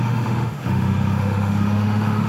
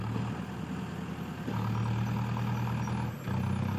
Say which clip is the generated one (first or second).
first